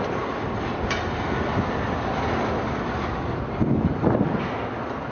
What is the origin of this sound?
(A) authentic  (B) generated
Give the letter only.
A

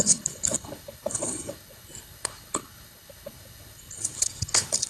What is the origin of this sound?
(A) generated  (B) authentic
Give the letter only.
A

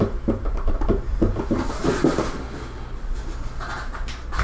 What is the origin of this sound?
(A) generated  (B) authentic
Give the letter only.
B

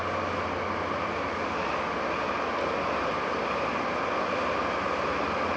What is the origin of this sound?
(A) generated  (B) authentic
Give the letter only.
B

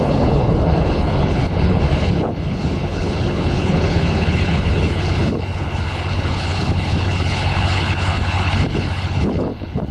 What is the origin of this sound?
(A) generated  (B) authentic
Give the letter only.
A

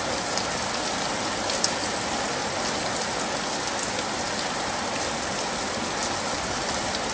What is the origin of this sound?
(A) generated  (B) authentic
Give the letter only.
B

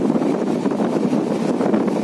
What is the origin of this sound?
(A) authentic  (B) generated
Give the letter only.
A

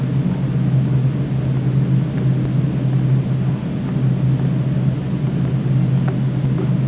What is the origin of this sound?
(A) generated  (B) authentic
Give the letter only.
B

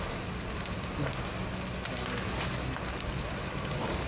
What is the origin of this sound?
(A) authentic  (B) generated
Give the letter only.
A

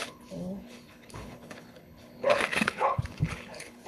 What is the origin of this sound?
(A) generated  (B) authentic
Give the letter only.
A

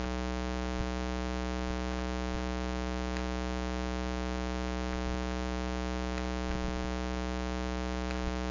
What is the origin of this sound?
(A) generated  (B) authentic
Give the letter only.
B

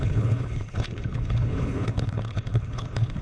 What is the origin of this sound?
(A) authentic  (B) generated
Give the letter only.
B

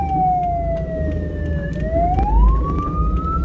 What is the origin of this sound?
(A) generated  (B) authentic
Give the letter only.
B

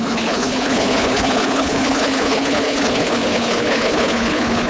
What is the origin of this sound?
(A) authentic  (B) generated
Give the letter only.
B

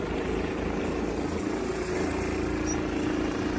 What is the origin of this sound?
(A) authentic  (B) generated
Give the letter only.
A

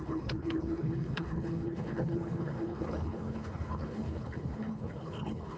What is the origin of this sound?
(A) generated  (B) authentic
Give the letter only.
A